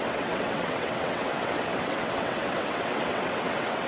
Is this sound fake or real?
fake